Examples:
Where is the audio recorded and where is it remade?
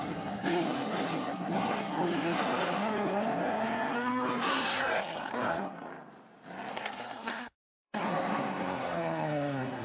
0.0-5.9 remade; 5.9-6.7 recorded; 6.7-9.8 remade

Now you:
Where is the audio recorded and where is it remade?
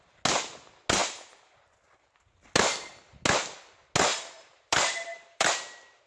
0.0-1.0 recorded; 1.0-1.7 remade; 1.7-4.1 recorded; 4.1-5.5 remade; 5.5-6.1 recorded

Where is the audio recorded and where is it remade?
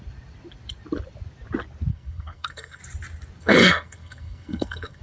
0.0-1.9 recorded; 1.9-2.8 remade; 2.8-3.4 recorded; 3.4-5.0 remade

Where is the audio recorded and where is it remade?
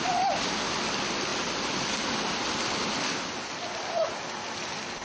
0.0-5.0 recorded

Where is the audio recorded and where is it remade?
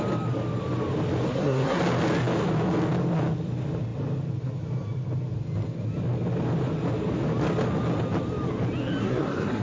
0.0-1.3 recorded; 1.3-1.8 remade; 1.8-9.0 recorded; 9.0-9.6 remade